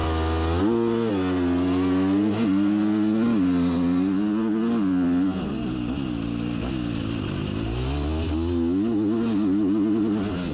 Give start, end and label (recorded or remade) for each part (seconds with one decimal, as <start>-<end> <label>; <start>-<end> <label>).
0.0-10.5 recorded